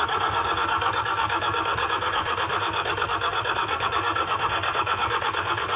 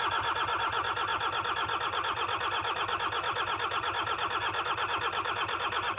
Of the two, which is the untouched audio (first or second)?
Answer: second